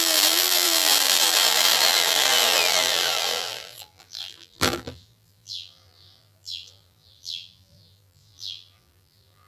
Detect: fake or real fake